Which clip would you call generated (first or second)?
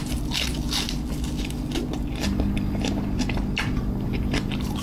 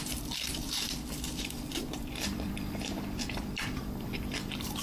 second